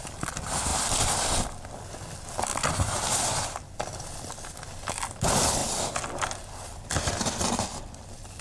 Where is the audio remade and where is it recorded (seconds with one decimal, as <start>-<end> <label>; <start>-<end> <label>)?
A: 0.0-2.5 remade; 2.5-4.9 recorded; 4.9-5.6 remade; 5.6-7.5 recorded; 7.5-8.4 remade